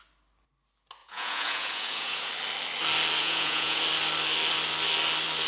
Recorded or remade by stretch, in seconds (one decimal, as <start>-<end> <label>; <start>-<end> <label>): 0.0-1.0 recorded; 1.0-2.3 remade; 2.3-3.2 recorded; 3.2-3.8 remade; 3.8-5.5 recorded